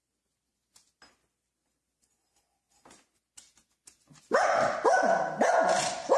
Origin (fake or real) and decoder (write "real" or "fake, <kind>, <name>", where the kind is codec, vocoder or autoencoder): real